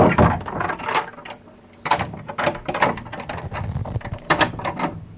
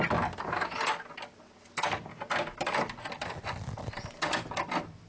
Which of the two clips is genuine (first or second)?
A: second